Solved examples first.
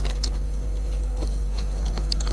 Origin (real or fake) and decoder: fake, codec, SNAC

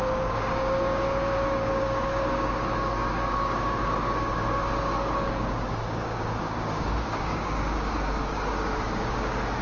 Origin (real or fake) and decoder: fake, codec, DAC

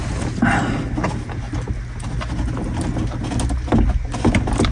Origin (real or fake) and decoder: real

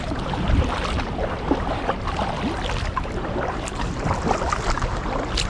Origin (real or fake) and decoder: real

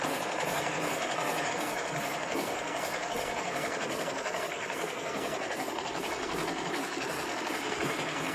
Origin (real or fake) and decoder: fake, codec, SNAC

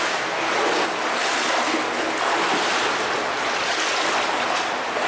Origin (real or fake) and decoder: real